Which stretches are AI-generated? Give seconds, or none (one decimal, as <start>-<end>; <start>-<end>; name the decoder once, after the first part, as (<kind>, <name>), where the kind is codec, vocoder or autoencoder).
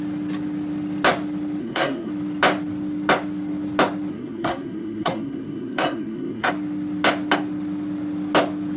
1.6-2.1 (codec, SNAC); 4.1-6.5